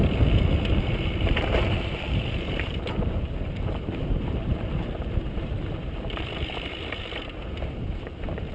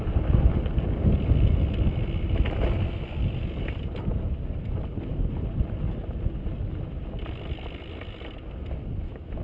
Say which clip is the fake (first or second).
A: first